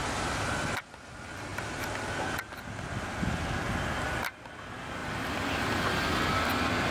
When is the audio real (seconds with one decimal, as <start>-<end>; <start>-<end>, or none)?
0.0-6.9